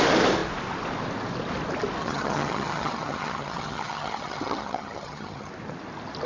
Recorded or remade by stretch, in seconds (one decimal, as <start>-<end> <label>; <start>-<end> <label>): 0.0-2.0 recorded; 2.0-5.5 remade; 5.5-6.3 recorded